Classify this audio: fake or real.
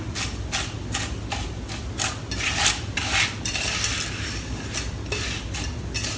real